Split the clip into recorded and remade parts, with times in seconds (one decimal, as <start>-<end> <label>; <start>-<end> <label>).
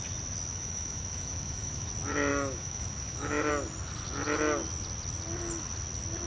0.0-0.5 recorded; 0.5-1.9 remade; 1.9-2.3 recorded; 2.3-3.5 remade; 3.5-6.3 recorded